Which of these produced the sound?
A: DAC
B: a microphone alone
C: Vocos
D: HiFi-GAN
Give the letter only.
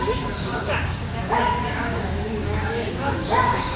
A